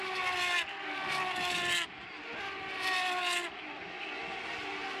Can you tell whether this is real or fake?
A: real